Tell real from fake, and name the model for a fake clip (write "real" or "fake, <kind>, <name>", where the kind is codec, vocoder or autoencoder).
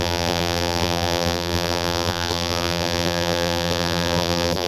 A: fake, vocoder, BigVGAN v2